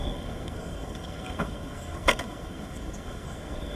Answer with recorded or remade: remade